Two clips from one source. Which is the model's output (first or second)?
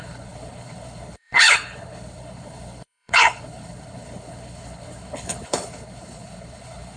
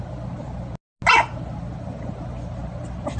first